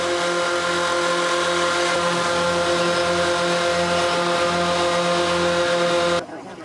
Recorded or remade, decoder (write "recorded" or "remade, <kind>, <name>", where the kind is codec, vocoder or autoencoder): recorded